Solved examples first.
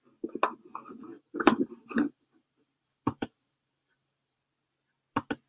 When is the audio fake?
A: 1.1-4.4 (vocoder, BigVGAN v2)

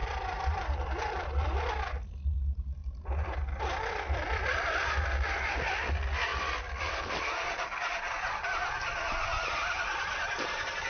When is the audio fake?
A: 0.0-1.6 (vocoder, BigVGAN v2); 2.8-4.6; 6.3-8.4